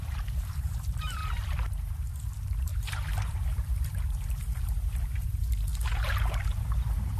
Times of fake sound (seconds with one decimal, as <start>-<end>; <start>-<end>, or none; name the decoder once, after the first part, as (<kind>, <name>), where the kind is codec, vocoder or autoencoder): 0.0-1.2 (vocoder, BigVGAN v2); 2.3-2.7; 5.2-7.2